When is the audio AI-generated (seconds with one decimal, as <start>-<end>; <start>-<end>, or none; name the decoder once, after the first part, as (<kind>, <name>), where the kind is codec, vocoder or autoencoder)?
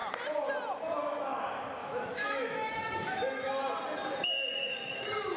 1.8-3.5 (autoencoder, DAC-VAE); 4.6-5.4